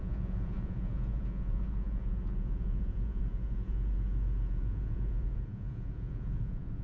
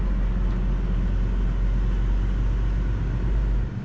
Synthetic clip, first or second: first